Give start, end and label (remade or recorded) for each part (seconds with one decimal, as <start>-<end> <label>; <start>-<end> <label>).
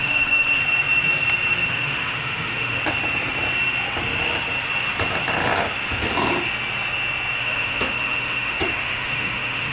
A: 0.0-0.6 remade; 0.6-1.7 recorded; 1.7-2.8 remade; 2.8-7.4 recorded; 7.4-9.7 remade